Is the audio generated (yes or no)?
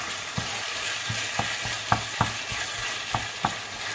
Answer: no